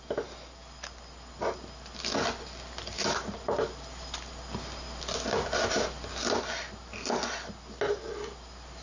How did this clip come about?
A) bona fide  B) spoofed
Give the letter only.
A